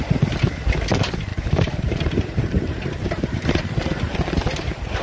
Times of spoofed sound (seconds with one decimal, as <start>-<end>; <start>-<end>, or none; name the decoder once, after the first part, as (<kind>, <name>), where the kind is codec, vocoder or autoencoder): 1.3-3.6 (vocoder, BigVGAN v2)